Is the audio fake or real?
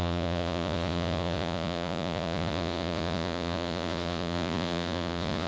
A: fake